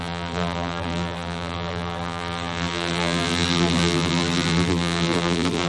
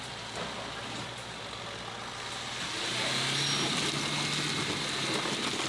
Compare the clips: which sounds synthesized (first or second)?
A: first